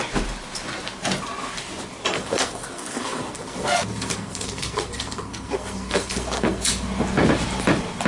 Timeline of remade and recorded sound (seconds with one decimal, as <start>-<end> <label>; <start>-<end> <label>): 0.0-2.1 recorded; 2.1-6.7 remade; 6.7-8.1 recorded